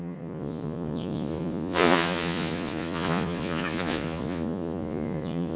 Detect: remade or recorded remade